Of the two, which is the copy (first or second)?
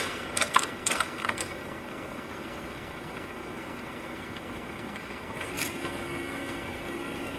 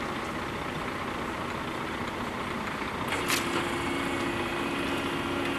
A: first